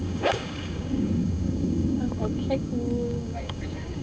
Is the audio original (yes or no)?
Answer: no